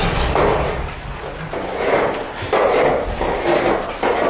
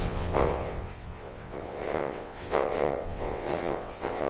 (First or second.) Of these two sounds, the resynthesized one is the second